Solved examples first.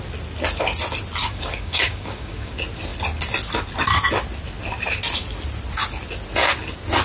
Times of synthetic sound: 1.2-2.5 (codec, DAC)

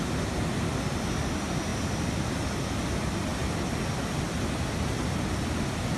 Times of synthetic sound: none

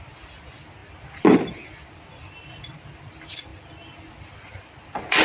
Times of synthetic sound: none

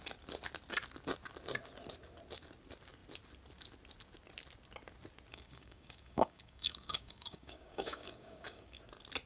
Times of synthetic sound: 5.3-8.8 (codec, DAC)

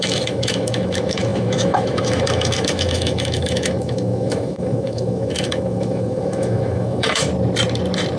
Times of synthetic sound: 0.0-7.3 (autoencoder, DAC-VAE)

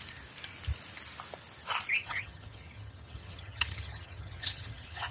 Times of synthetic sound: 2.0-5.1 (vocoder, HiFi-GAN)

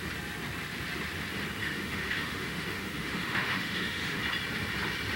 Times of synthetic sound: 1.6-4.2 (autoencoder, DAC-VAE)

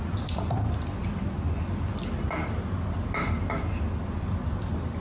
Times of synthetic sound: none